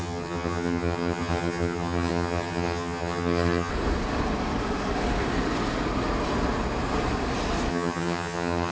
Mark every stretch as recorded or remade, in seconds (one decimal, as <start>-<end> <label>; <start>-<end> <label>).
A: 0.0-3.7 remade; 3.7-7.7 recorded; 7.7-8.7 remade